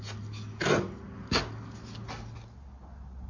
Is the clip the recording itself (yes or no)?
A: yes